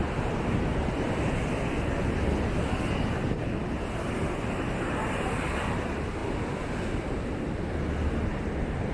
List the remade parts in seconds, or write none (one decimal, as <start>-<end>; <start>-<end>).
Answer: 0.7-1.3